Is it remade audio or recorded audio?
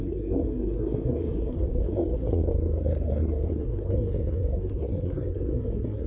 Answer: remade